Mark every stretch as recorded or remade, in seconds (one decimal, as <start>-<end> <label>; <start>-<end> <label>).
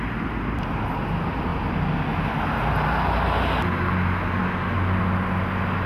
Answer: 0.0-5.9 recorded